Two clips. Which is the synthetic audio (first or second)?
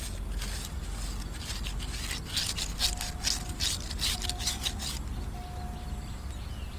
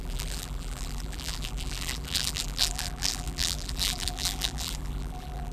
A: second